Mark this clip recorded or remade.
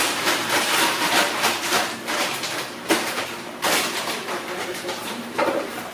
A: remade